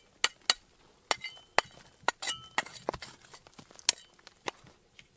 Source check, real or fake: real